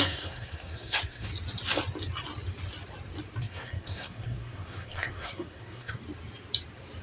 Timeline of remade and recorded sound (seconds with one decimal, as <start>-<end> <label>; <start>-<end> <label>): 0.0-1.3 remade; 1.3-3.4 recorded; 3.4-6.0 remade; 6.0-7.0 recorded